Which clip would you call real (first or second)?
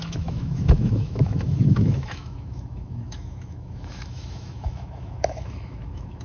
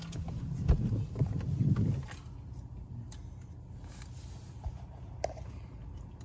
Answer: second